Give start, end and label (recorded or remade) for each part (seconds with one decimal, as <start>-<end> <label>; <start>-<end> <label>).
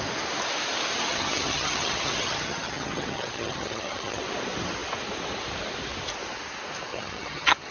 0.0-1.1 recorded; 1.1-4.2 remade; 4.2-6.9 recorded; 6.9-7.7 remade